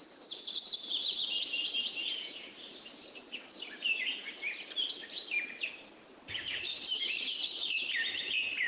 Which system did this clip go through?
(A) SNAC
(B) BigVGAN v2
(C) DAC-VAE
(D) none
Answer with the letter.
B